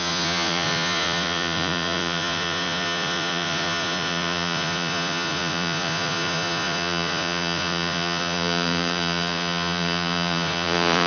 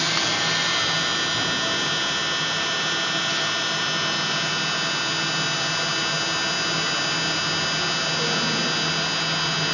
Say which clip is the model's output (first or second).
first